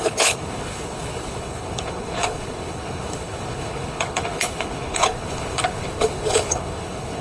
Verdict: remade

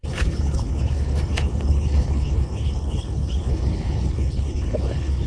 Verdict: remade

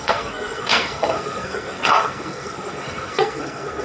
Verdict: remade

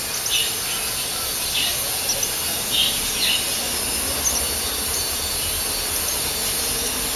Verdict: recorded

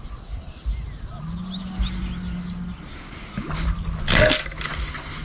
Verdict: recorded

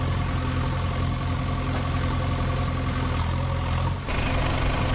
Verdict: recorded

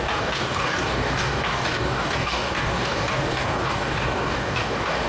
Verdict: remade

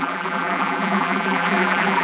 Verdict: remade